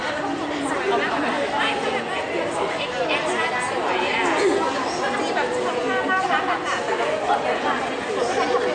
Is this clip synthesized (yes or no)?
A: no